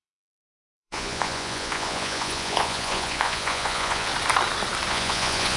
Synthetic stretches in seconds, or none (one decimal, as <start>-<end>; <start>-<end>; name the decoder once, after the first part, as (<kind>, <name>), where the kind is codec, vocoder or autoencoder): 0.0-4.1 (vocoder, Vocos); 4.9-5.6